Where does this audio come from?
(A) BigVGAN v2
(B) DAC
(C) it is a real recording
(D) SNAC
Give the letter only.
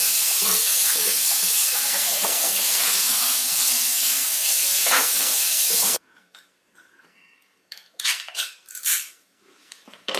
D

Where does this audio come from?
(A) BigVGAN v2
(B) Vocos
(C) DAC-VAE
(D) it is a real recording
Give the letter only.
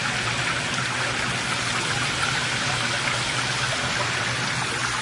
D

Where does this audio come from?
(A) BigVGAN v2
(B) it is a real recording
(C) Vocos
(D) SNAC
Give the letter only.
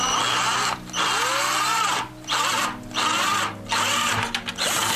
B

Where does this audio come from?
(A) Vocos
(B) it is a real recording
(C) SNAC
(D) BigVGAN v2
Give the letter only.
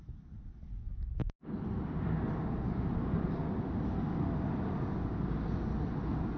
B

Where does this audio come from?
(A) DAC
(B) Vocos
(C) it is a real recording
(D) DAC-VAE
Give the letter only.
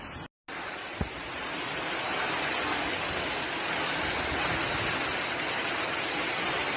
C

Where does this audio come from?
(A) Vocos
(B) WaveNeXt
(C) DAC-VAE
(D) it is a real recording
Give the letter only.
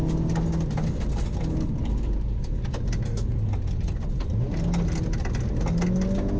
D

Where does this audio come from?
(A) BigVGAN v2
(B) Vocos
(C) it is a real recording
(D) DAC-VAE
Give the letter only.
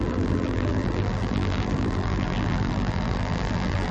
A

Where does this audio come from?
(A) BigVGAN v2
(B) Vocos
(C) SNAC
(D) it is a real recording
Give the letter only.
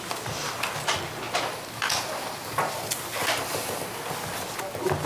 D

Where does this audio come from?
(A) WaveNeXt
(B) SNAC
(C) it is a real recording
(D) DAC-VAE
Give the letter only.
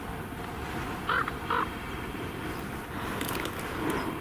C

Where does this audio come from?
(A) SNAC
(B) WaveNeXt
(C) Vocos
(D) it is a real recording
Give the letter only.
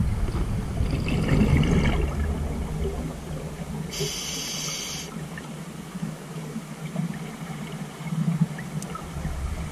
D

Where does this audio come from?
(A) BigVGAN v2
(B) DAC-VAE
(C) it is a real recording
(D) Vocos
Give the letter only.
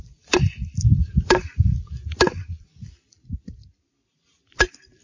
A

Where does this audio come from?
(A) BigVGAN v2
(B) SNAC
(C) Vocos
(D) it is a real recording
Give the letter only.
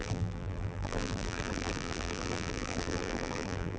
A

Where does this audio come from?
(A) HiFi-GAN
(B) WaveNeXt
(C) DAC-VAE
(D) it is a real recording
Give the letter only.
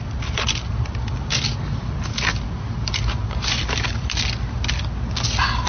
D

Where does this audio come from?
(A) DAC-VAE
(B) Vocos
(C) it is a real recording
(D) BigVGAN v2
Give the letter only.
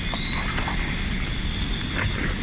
D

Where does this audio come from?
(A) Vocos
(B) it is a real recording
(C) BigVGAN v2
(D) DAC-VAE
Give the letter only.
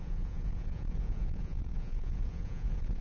A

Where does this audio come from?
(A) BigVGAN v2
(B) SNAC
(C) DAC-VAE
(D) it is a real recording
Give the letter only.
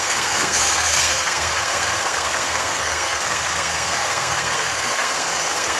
B